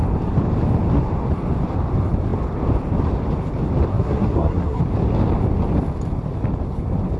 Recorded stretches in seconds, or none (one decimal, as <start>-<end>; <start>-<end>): 0.0-3.9; 4.8-7.2